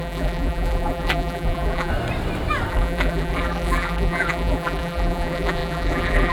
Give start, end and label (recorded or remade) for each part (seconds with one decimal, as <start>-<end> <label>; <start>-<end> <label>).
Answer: 0.0-1.9 remade; 1.9-2.7 recorded; 2.7-6.3 remade